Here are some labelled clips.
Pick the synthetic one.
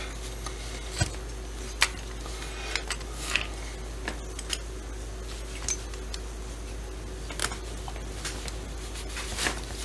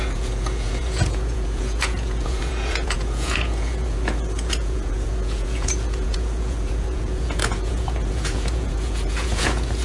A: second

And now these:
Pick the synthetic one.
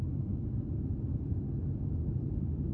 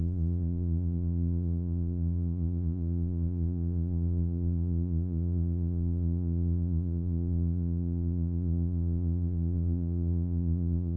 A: second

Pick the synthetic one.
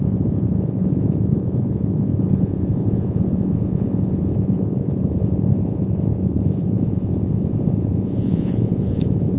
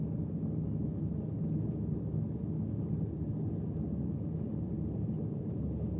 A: first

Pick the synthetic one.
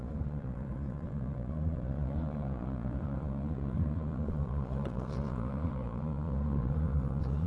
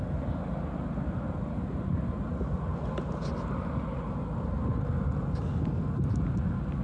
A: first